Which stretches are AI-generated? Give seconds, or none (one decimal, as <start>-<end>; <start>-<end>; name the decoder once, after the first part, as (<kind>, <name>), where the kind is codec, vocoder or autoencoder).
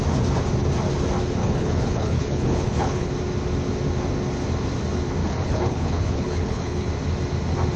1.4-3.1 (codec, HILCodec); 5.2-6.9